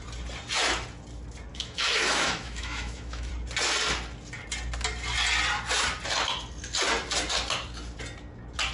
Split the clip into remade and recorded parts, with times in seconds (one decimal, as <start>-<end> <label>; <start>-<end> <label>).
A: 0.0-1.5 recorded; 1.5-3.3 remade; 3.3-8.7 recorded

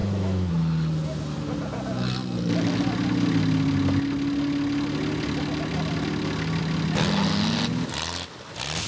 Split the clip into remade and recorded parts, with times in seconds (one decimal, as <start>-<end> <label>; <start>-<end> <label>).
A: 0.0-0.5 remade; 0.5-8.9 recorded

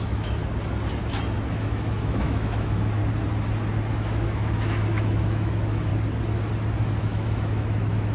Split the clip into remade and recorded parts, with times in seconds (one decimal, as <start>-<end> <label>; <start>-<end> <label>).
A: 0.0-0.4 remade; 0.4-1.5 recorded; 1.5-3.0 remade; 3.0-3.9 recorded; 3.9-5.9 remade; 5.9-7.0 recorded; 7.0-8.1 remade

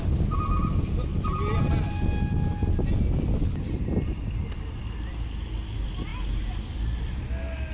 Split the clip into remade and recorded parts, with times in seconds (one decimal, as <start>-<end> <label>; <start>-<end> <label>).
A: 0.0-7.7 recorded

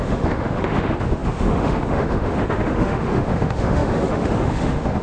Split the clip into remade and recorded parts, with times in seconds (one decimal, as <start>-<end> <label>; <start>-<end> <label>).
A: 0.0-5.0 remade

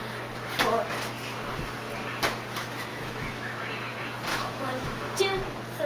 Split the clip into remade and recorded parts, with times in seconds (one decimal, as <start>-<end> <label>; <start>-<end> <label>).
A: 0.0-2.9 recorded; 2.9-3.6 remade; 3.6-4.3 recorded; 4.3-5.2 remade; 5.2-5.9 recorded

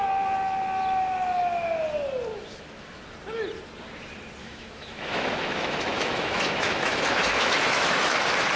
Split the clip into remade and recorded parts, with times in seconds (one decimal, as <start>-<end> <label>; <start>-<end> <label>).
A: 0.0-2.3 recorded; 2.3-3.0 remade; 3.0-4.4 recorded; 4.4-8.2 remade; 8.2-8.6 recorded

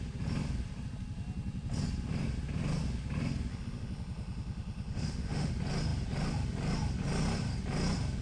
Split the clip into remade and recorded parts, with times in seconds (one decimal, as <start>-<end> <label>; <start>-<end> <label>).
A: 0.0-3.5 recorded; 3.5-5.5 remade; 5.5-8.2 recorded